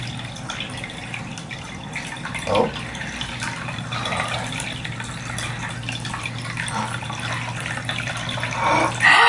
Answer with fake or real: real